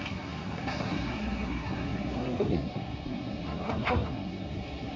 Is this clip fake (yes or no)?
yes